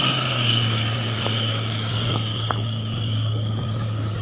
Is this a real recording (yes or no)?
no